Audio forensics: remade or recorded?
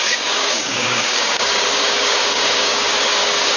remade